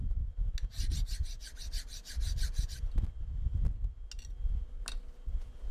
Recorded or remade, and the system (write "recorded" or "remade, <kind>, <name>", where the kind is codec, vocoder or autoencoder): recorded